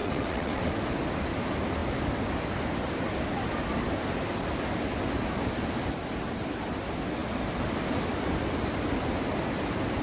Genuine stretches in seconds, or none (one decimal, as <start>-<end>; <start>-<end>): 0.7-10.0